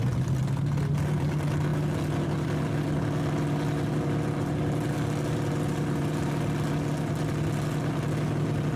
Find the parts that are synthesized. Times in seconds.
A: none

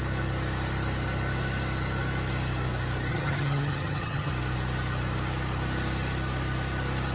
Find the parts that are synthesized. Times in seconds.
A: 3.1-4.3 (vocoder, HiFi-GAN)

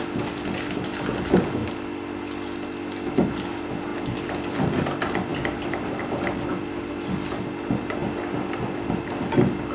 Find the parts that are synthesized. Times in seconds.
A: none

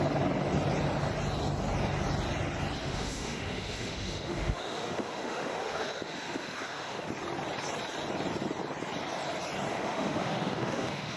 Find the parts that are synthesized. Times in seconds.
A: 2.8-7.1 (autoencoder, DAC-VAE); 9.7-11.2

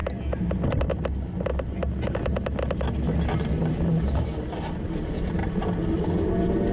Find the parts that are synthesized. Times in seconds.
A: none

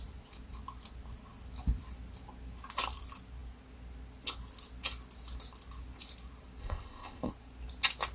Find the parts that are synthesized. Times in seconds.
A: 6.6-7.3 (codec, ZipCodec)